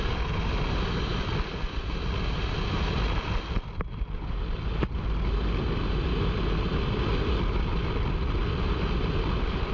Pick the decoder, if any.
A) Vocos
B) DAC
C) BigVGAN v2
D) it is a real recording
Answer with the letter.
D